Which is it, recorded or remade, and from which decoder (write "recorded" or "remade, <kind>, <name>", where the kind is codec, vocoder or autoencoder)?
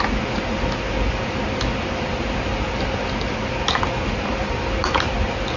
recorded